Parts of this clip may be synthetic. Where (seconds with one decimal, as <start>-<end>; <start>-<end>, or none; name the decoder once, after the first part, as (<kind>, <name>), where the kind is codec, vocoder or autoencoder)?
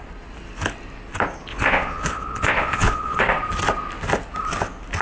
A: 1.5-3.2 (vocoder, Vocos)